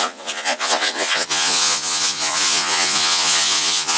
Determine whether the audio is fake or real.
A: fake